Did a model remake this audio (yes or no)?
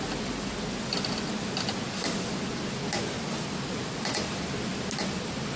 no